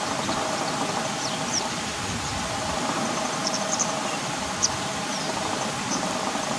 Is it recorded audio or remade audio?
remade